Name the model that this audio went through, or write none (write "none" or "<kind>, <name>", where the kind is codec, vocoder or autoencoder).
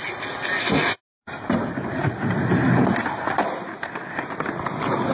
none